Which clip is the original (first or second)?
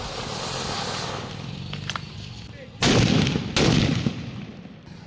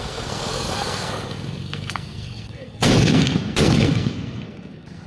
first